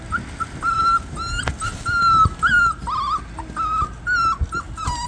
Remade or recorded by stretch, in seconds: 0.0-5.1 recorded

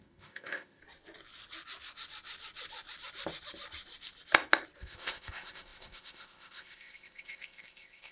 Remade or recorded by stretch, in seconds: 0.0-0.8 remade; 0.8-4.8 recorded; 4.8-8.1 remade